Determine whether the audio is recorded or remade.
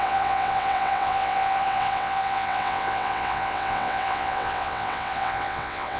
remade